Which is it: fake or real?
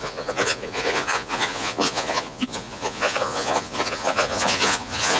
fake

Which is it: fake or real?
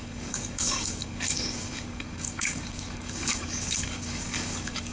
fake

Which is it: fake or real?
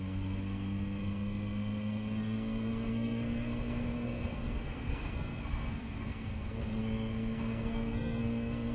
fake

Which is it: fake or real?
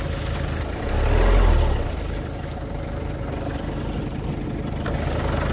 real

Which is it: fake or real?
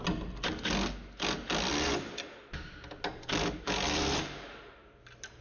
real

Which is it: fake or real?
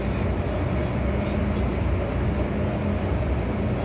real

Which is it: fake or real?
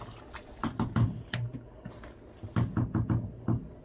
real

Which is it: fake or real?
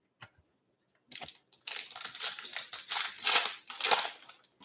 real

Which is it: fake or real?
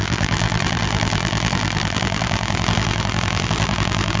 fake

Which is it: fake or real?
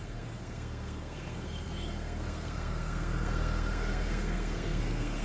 fake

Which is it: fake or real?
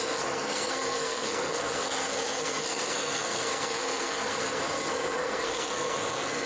fake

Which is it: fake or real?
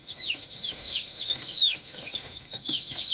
fake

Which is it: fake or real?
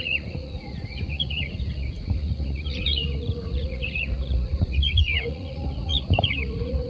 fake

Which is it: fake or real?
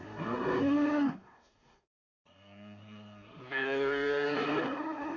fake